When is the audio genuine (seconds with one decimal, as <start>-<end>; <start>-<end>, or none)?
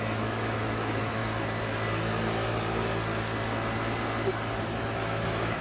1.2-4.6